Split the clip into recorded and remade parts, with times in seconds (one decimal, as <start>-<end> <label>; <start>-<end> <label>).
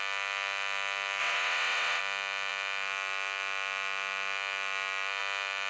0.0-1.2 recorded; 1.2-2.0 remade; 2.0-5.7 recorded